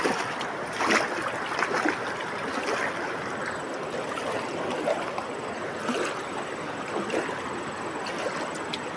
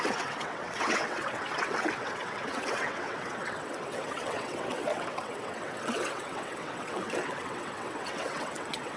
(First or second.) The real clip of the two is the first